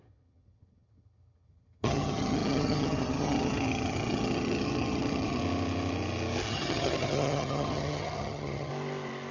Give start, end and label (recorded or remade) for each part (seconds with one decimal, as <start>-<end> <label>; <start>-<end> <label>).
0.0-5.4 remade; 5.4-6.5 recorded; 6.5-8.7 remade; 8.7-9.3 recorded